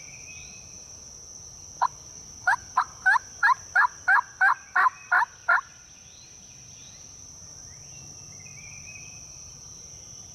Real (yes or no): yes